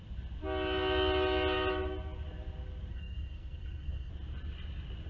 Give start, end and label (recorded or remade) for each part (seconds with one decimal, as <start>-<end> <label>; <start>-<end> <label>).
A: 0.0-2.9 recorded; 2.9-4.1 remade; 4.1-5.1 recorded